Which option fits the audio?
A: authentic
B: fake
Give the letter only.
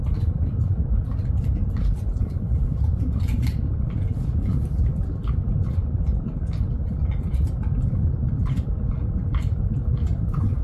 A